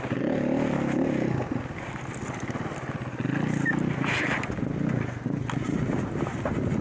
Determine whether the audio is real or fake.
real